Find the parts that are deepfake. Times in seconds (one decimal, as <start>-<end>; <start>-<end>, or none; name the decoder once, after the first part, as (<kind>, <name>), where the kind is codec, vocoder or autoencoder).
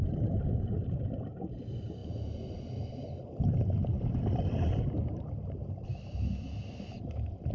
none